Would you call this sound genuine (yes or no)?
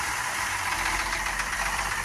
no